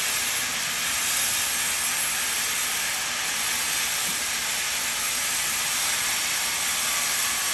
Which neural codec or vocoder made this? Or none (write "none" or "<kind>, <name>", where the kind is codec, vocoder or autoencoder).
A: none